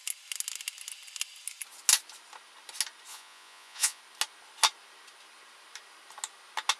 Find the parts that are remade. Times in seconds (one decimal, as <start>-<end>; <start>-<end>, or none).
3.1-4.0